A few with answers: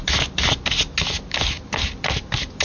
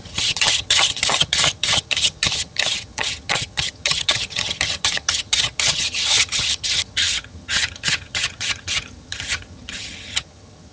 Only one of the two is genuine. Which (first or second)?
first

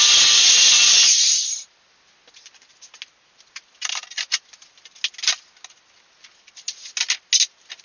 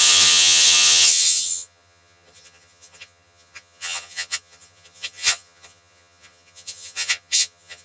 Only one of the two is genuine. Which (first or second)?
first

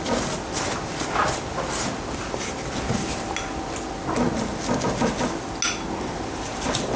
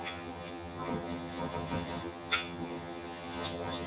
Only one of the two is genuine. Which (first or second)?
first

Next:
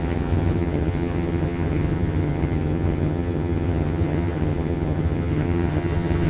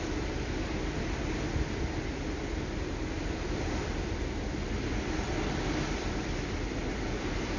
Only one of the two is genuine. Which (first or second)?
second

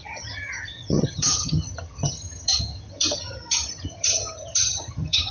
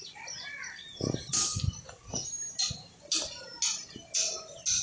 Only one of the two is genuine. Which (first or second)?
second